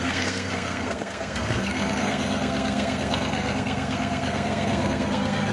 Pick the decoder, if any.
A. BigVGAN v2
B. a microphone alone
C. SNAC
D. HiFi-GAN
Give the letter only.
C